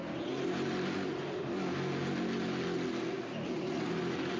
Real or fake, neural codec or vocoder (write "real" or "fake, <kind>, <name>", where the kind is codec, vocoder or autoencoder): real